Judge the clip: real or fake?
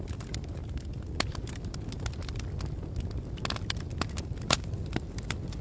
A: real